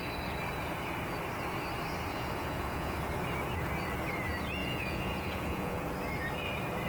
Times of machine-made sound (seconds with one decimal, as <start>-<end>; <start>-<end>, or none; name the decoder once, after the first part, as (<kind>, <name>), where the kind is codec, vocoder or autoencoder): 2.1-3.0 (vocoder, Vocos); 4.6-5.8